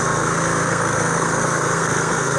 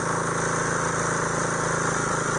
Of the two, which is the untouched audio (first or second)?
second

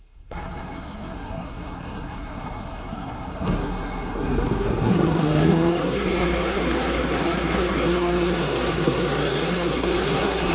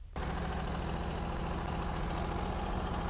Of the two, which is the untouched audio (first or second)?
second